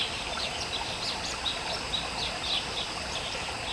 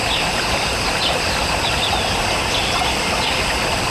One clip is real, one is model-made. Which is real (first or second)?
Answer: second